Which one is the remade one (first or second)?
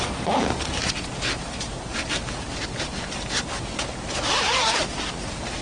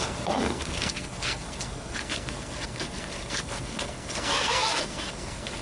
second